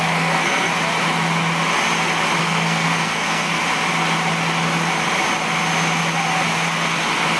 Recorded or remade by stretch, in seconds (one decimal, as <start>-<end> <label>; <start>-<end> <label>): 0.0-0.7 remade; 0.7-2.4 recorded; 2.4-3.6 remade; 3.6-7.4 recorded